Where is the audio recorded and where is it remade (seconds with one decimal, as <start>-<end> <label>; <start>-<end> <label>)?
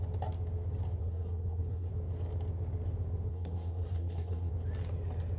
0.0-1.0 recorded; 1.0-1.9 remade; 1.9-3.3 recorded; 3.3-4.5 remade; 4.5-5.4 recorded